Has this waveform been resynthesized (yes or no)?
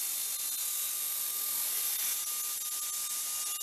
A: no